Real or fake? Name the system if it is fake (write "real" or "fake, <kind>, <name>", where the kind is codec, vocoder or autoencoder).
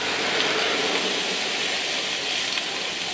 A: real